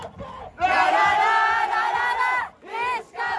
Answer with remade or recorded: recorded